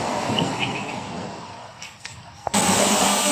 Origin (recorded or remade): remade